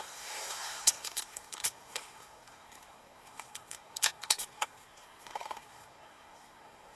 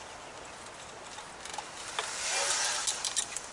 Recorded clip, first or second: second